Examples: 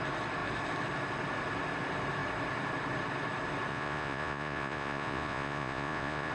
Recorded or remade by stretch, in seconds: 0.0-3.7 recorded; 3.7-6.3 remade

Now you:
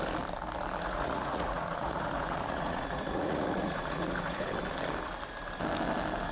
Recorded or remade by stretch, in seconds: 0.0-0.8 recorded; 0.8-4.5 remade; 4.5-6.3 recorded

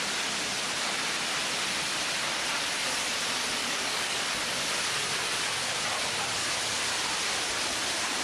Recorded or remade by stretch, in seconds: 0.0-3.6 recorded; 3.6-4.3 remade; 4.3-8.2 recorded

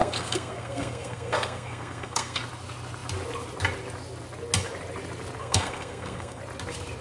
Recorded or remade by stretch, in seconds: 0.0-2.4 remade; 2.4-5.4 recorded; 5.4-6.4 remade; 6.4-7.0 recorded

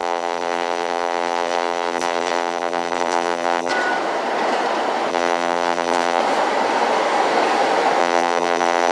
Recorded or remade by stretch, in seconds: 0.0-3.7 remade; 3.7-5.1 recorded; 5.1-6.2 remade; 6.2-8.0 recorded; 8.0-8.9 remade

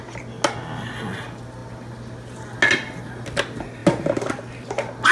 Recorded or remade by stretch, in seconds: 0.0-5.1 recorded

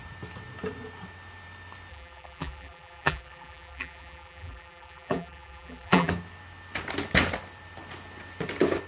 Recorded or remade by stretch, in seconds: 0.0-1.9 recorded; 1.9-6.1 remade; 6.1-8.9 recorded